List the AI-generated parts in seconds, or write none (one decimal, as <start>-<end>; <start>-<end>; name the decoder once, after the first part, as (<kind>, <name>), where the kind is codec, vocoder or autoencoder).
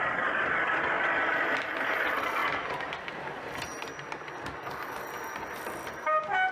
none